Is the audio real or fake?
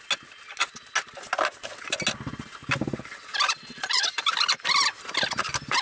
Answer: real